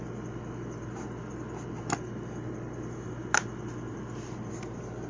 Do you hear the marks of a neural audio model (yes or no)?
no